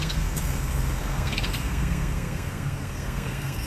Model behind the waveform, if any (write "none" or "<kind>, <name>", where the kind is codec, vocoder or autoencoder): codec, SNAC